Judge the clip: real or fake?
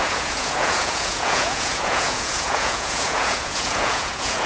fake